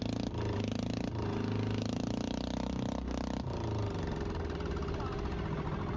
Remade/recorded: recorded